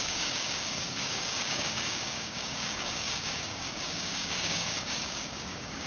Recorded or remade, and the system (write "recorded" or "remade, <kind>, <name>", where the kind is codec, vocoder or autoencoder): remade, codec, DAC